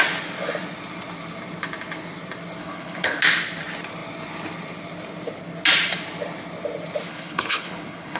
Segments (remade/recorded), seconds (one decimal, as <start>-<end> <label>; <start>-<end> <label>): 0.0-2.6 recorded; 2.6-3.2 remade; 3.2-7.1 recorded; 7.1-8.2 remade